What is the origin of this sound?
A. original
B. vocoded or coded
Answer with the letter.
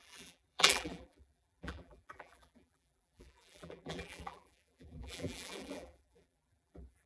B